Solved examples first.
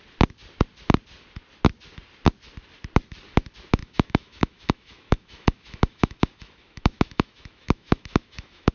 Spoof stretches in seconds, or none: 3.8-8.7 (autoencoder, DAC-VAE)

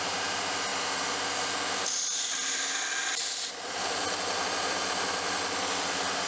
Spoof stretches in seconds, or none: none

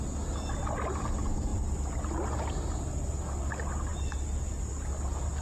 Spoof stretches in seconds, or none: none

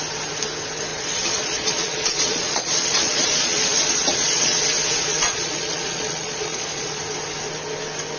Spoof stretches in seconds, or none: 0.9-4.6 (vocoder, Vocos); 5.1-7.0

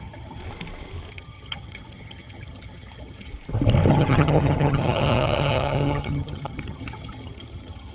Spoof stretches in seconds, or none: 0.0-0.4 (vocoder, HiFi-GAN); 1.1-3.3; 3.9-7.9